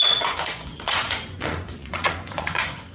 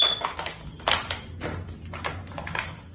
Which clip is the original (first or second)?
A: second